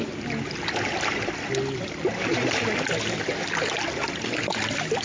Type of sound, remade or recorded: recorded